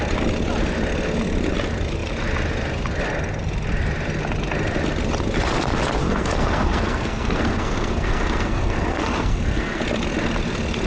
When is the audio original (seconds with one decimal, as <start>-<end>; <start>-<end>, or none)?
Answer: 0.0-6.0; 9.8-10.9